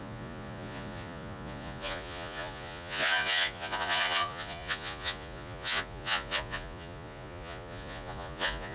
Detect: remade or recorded remade